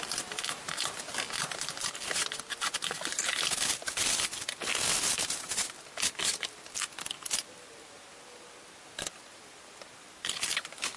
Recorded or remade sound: recorded